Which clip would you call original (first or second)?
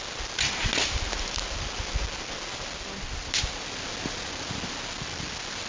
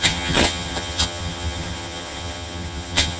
first